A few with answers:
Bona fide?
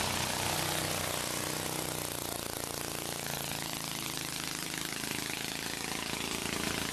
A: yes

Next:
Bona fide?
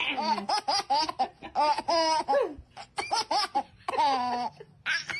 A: yes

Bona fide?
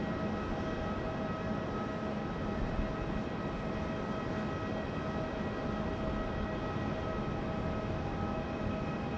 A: yes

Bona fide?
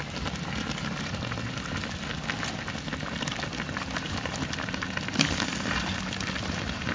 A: yes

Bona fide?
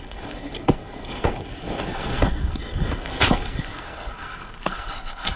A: no